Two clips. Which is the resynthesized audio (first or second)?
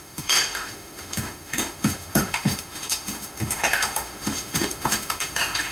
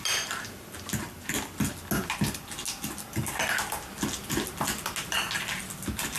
first